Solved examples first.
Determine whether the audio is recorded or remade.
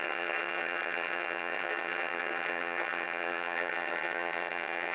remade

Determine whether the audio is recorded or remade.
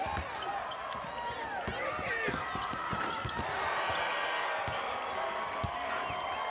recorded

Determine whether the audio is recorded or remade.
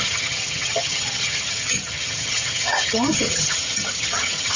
remade